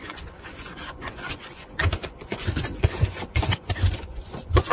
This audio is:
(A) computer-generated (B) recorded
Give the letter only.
A